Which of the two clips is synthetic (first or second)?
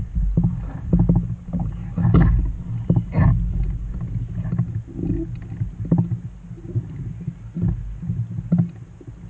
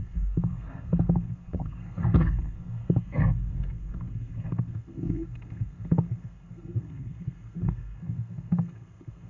second